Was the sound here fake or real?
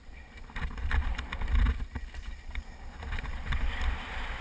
real